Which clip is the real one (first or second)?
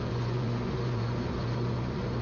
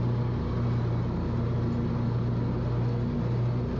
second